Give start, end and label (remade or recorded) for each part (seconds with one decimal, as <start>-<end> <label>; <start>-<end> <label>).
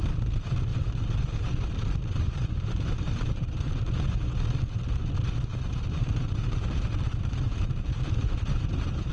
0.0-0.7 recorded; 0.7-4.3 remade; 4.3-5.5 recorded; 5.5-9.1 remade